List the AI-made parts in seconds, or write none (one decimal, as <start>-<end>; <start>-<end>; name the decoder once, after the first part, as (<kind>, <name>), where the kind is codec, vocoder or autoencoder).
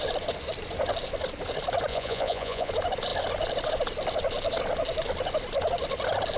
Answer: 1.9-2.7 (vocoder, Vocos)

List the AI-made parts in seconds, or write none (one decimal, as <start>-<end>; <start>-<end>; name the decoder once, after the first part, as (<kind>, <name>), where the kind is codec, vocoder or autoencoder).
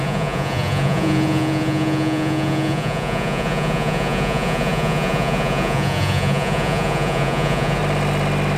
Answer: 0.0-7.8 (vocoder, Vocos)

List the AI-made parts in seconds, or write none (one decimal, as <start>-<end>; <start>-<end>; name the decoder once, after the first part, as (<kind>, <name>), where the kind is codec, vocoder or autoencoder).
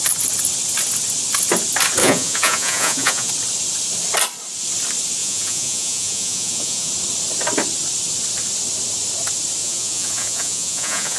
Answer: 2.0-3.3 (vocoder, Vocos); 5.2-6.9; 9.6-11.2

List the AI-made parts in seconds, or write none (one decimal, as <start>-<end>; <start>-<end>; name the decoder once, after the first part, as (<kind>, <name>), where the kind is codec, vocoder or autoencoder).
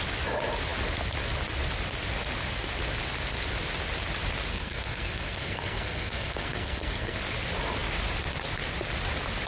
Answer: 4.5-7.2 (codec, SNAC)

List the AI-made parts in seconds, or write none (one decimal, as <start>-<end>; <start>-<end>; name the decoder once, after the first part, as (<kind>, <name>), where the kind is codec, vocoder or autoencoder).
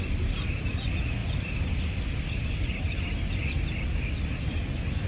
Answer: 1.2-1.7 (vocoder, BigVGAN v2)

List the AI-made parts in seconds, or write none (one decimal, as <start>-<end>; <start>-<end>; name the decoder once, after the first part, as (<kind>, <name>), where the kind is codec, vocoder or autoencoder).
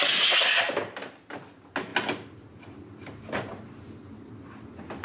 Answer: 1.9-3.6 (vocoder, BigVGAN v2)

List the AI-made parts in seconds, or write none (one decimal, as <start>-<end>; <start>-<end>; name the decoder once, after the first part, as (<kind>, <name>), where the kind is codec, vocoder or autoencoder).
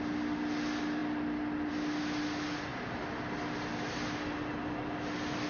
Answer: none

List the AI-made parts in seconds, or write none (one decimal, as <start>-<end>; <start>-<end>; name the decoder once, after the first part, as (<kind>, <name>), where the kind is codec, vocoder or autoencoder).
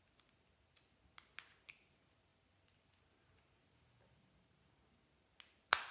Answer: none